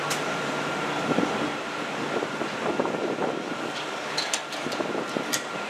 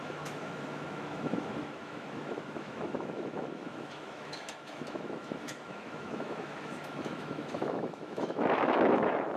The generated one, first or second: second